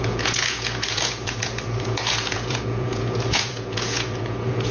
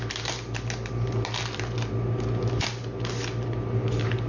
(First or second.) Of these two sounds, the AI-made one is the first